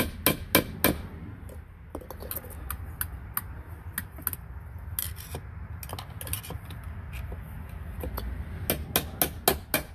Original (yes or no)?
yes